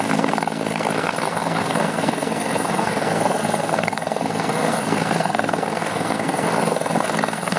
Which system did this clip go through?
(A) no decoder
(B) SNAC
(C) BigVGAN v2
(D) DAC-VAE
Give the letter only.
B